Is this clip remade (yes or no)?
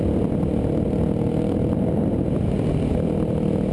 no